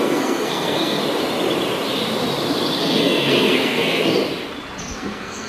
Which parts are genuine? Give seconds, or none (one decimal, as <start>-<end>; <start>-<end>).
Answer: 1.0-2.8; 4.2-4.8